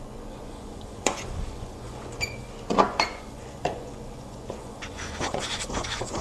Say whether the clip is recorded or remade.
remade